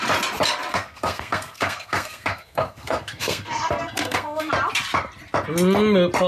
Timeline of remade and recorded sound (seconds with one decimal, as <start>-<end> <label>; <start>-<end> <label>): 0.0-0.7 recorded; 0.7-4.5 remade; 4.5-6.3 recorded